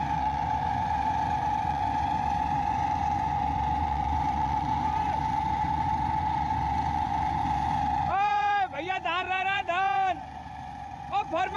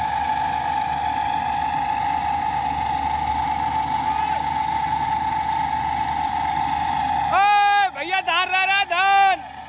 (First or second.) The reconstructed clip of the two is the first